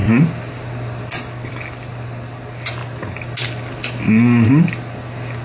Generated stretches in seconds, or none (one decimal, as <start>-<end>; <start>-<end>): none